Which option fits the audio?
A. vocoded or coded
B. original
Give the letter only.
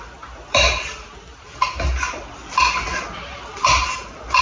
B